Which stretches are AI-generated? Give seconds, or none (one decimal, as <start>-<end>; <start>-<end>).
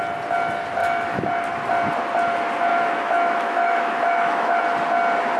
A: 0.8-1.3; 2.7-4.6